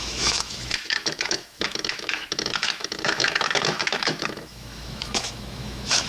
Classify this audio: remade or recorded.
remade